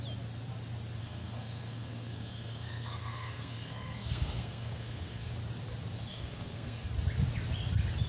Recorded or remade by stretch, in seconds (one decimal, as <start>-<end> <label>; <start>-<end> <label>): 0.0-1.0 recorded; 1.0-5.3 remade; 5.3-6.1 recorded; 6.1-6.9 remade; 6.9-8.1 recorded